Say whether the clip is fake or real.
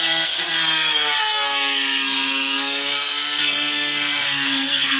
fake